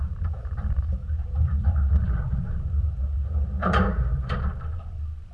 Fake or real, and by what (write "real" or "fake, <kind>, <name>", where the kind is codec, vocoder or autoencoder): fake, vocoder, BigVGAN v2